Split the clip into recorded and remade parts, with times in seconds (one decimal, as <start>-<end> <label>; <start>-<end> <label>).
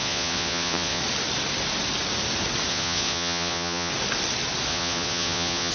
0.0-1.0 remade; 1.0-2.7 recorded; 2.7-3.9 remade; 3.9-4.7 recorded; 4.7-5.7 remade